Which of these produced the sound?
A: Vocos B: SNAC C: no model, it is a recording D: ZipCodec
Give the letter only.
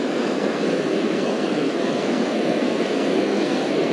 B